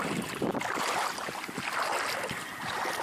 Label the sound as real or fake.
real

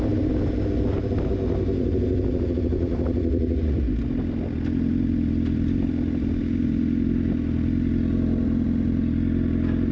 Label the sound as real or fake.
real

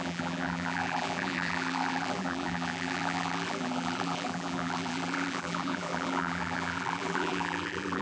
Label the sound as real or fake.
fake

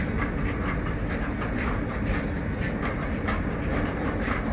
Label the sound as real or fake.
real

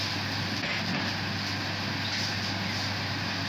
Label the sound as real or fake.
real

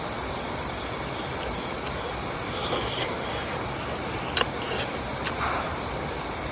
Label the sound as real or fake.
real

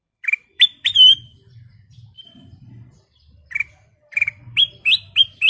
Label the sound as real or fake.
fake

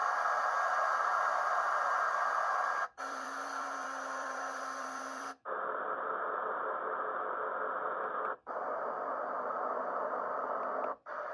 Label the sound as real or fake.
fake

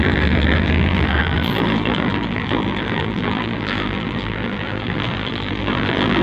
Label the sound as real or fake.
fake